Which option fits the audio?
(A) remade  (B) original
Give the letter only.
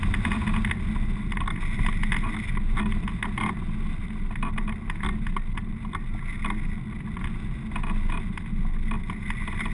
B